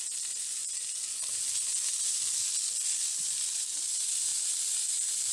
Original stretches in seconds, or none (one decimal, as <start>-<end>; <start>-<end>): 0.0-5.3

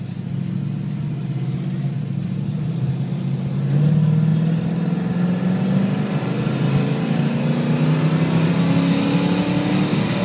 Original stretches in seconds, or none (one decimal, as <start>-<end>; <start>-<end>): 0.0-10.2